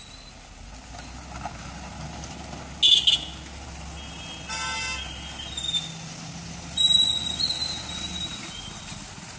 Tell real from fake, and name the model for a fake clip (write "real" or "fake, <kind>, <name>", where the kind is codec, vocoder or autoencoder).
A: real